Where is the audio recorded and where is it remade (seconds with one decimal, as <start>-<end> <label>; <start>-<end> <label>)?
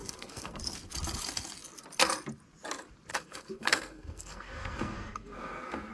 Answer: 0.0-0.6 remade; 0.6-3.1 recorded; 3.1-5.9 remade